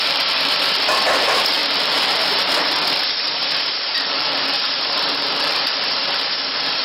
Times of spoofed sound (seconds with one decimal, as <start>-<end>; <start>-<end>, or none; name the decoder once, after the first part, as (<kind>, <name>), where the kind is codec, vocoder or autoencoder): 0.0-6.8 (vocoder, BigVGAN v2)